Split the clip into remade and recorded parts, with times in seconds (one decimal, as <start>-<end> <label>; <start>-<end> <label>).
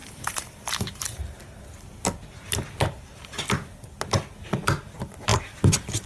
0.0-1.2 remade; 1.2-6.1 recorded